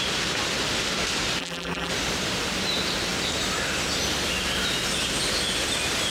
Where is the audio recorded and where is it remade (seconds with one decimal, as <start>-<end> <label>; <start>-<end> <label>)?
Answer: 0.0-1.4 recorded; 1.4-1.9 remade; 1.9-6.1 recorded